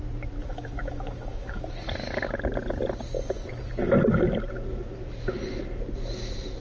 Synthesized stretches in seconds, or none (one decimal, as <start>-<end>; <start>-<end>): 0.5-1.6